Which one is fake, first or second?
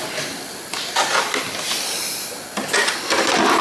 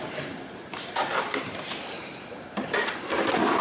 second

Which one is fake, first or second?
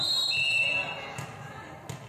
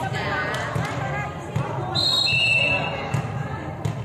second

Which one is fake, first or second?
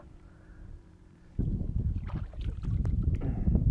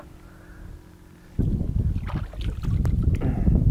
first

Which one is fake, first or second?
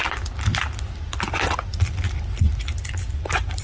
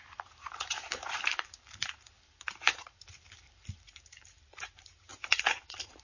second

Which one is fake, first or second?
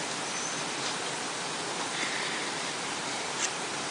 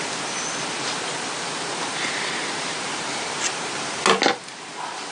first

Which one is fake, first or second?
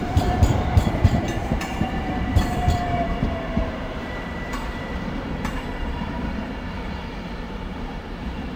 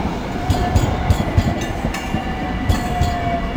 first